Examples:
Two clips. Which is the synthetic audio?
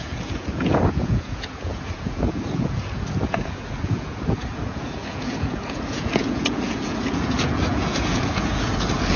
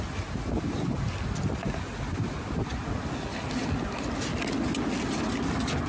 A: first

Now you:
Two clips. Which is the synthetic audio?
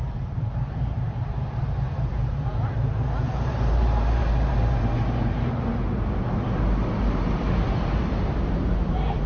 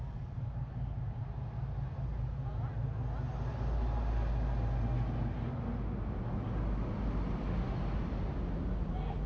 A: first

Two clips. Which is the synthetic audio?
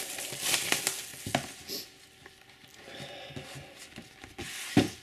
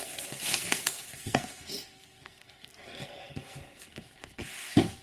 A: second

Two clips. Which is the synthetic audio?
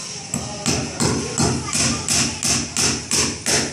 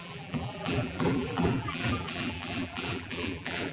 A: second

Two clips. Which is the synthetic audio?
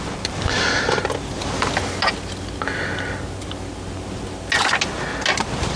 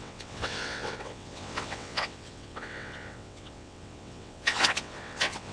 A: second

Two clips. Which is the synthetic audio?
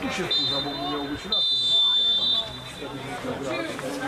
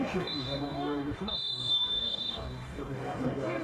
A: second